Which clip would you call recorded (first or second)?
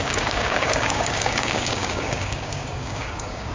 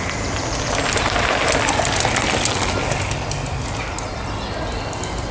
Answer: second